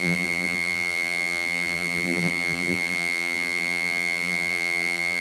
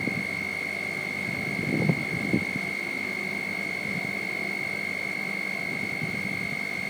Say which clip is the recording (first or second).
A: second